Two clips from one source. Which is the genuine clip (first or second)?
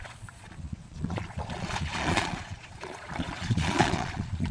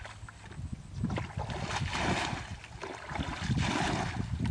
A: second